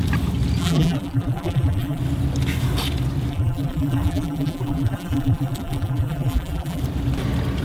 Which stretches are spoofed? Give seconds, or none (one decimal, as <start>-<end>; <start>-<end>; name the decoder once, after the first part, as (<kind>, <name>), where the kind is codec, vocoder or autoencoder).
0.6-2.0 (vocoder, BigVGAN v2); 3.3-6.8